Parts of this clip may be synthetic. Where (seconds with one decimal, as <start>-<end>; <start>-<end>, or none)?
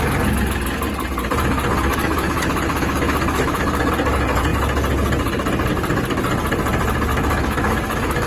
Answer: 1.9-3.9; 7.1-8.3